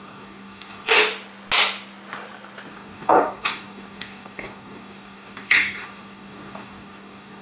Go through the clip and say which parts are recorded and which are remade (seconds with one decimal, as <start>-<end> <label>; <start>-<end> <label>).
0.0-1.0 remade; 1.0-2.7 recorded; 2.7-7.4 remade